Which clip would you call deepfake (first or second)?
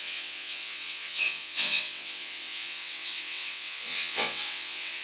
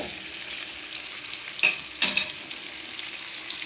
first